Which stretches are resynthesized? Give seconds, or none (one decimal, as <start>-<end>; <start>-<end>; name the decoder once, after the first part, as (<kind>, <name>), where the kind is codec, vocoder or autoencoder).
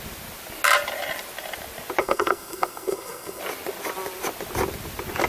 2.0-3.4 (codec, SNAC)